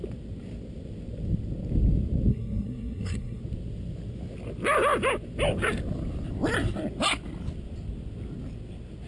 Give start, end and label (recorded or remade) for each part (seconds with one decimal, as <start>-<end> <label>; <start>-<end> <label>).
0.0-2.3 recorded; 2.3-3.4 remade; 3.4-9.1 recorded